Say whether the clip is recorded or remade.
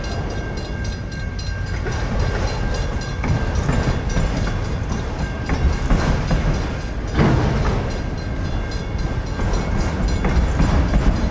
recorded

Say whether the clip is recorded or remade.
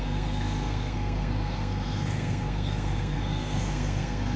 remade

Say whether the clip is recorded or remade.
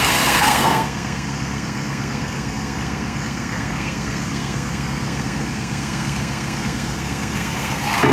remade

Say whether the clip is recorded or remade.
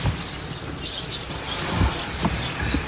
recorded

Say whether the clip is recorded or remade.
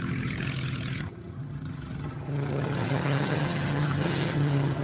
remade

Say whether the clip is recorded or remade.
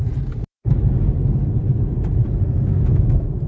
recorded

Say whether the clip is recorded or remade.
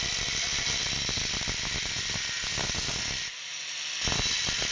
recorded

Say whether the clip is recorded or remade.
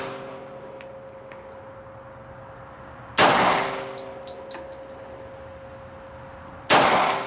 recorded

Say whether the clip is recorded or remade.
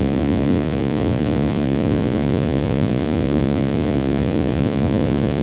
remade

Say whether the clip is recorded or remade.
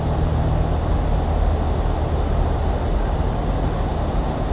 recorded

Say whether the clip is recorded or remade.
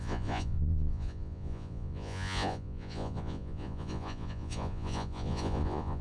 remade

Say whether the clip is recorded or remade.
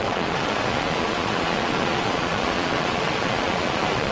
remade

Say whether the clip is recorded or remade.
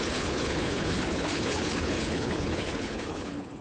remade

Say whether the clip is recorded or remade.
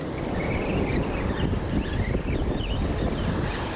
recorded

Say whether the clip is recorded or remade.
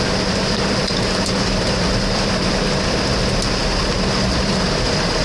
remade